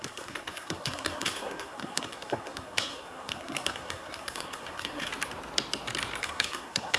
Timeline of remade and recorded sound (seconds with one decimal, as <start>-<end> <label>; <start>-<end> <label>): 0.0-5.1 remade; 5.1-6.2 recorded; 6.2-7.0 remade